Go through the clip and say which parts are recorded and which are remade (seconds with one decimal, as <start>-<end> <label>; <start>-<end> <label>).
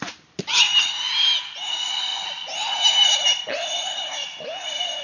0.0-5.0 recorded